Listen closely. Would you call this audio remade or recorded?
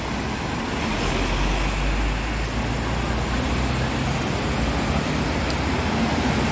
recorded